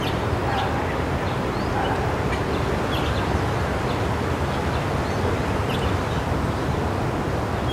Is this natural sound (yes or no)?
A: yes